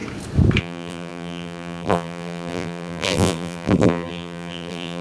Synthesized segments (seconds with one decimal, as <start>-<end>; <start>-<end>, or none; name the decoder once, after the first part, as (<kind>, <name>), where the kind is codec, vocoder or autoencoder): 0.6-5.0 (vocoder, BigVGAN v2)